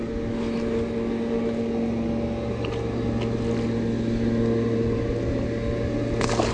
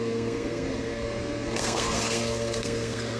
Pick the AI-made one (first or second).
second